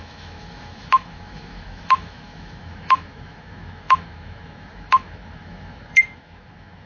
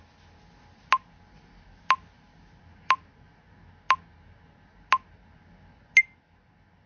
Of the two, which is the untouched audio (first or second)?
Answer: second